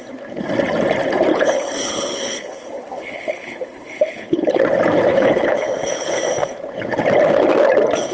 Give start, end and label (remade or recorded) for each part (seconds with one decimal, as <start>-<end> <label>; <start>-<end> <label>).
0.0-1.3 recorded; 1.3-4.6 remade; 4.6-5.1 recorded; 5.1-6.2 remade; 6.2-8.1 recorded